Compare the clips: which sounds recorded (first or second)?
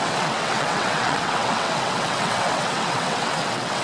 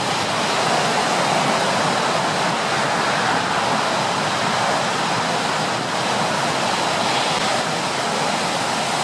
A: second